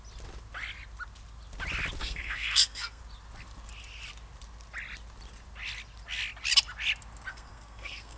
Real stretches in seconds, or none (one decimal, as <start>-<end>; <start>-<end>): 0.0-2.0; 3.0-7.3